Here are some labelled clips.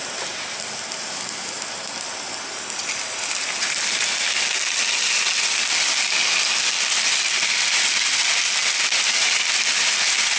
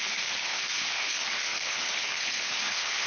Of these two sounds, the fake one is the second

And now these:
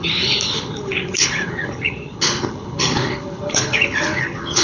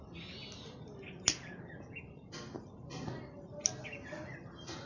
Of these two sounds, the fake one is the first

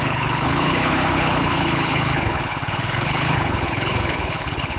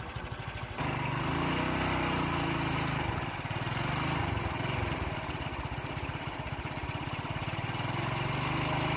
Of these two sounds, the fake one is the first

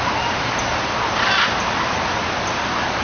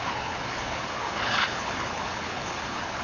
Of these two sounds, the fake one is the second